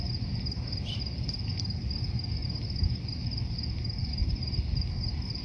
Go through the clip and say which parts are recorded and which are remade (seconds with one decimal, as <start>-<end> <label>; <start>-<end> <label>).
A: 0.0-4.2 recorded; 4.2-5.4 remade